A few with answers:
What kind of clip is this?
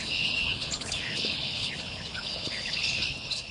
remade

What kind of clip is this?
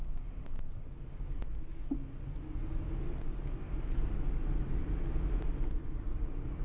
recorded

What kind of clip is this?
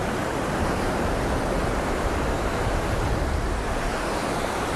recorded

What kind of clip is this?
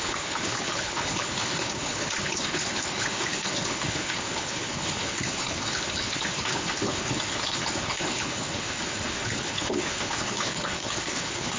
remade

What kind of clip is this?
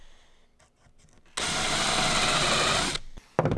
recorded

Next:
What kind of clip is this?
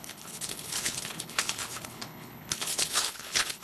remade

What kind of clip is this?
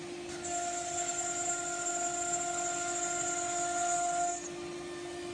recorded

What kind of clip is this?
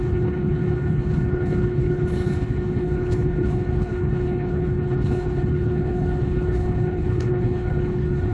remade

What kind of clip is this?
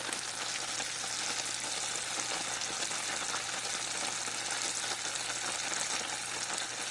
recorded